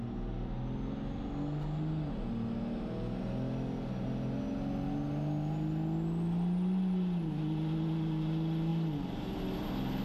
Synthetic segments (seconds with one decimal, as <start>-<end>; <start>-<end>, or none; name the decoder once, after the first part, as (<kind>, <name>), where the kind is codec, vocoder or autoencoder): none